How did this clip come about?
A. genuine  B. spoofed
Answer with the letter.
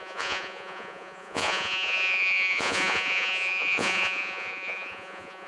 B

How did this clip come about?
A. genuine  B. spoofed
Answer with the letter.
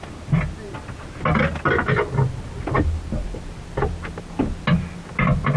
A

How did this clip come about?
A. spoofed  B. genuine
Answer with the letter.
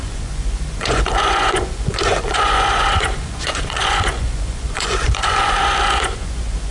A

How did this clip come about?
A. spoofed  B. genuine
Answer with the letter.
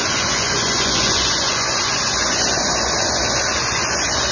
A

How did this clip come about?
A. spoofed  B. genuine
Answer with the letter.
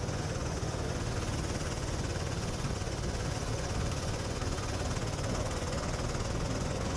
A